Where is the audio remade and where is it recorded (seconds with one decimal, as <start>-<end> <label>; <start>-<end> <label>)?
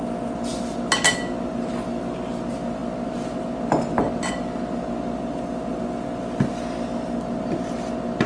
0.0-8.3 recorded